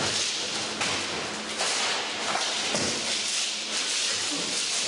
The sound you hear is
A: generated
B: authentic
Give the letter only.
B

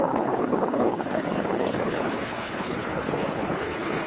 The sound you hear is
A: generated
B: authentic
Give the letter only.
A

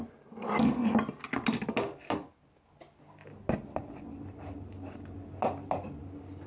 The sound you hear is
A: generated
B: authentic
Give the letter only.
B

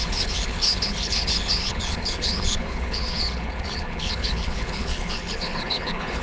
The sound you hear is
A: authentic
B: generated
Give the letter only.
B